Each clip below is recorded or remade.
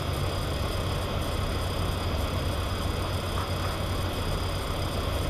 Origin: recorded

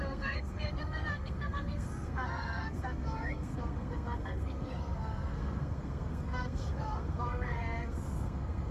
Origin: remade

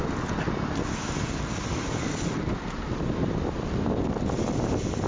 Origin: recorded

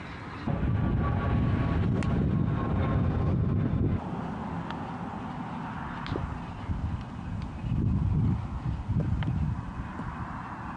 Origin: recorded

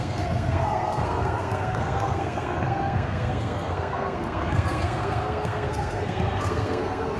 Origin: remade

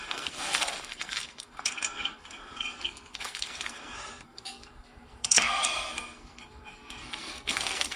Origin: remade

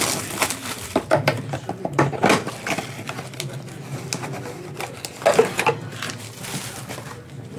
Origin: recorded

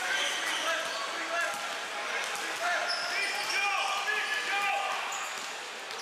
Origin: recorded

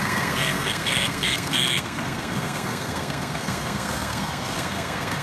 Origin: remade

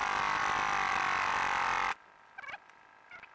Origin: recorded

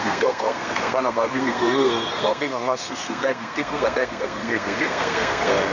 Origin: remade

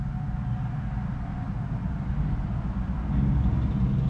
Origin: recorded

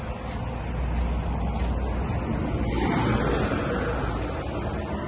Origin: recorded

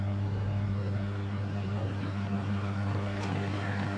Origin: remade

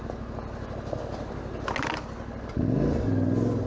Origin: recorded